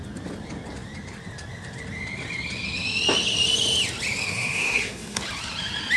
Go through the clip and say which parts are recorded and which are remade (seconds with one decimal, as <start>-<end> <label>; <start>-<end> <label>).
0.0-4.3 recorded; 4.3-5.2 remade; 5.2-6.0 recorded